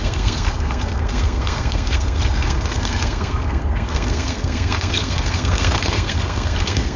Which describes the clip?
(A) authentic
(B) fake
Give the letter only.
B